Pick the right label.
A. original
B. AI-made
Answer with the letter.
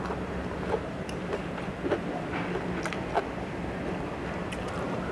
A